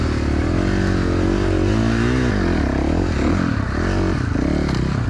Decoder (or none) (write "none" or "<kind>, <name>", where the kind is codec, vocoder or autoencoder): none